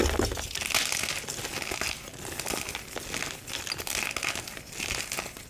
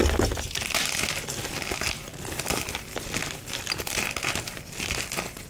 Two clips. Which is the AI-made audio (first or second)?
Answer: second